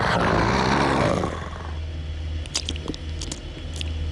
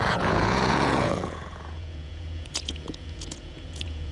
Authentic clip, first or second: first